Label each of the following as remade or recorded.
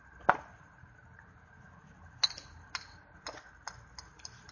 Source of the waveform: recorded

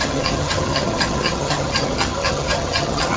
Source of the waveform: remade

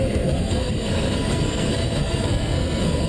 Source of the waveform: remade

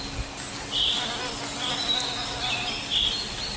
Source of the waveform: recorded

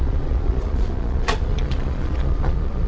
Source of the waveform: remade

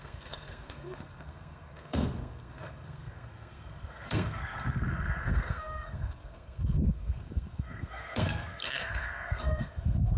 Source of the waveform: remade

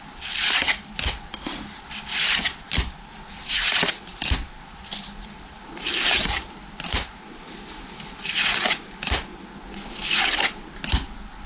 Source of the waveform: recorded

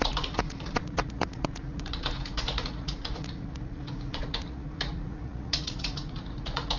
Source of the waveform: remade